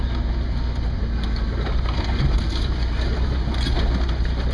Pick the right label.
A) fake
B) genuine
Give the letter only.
B